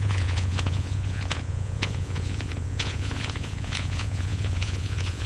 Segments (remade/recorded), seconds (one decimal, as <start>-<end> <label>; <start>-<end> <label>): 0.0-5.3 remade